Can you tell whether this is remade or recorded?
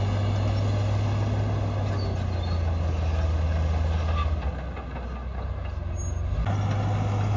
recorded